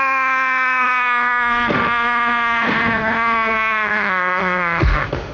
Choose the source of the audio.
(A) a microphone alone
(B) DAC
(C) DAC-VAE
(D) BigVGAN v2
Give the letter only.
C